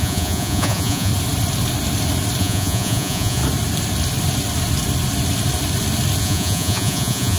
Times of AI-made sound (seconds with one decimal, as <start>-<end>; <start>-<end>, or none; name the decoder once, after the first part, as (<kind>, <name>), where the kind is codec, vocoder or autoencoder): 0.0-1.1 (vocoder, Vocos); 2.4-3.4; 6.2-7.4